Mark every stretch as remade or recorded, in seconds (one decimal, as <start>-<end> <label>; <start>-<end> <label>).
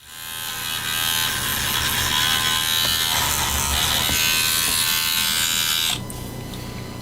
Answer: 0.0-7.0 recorded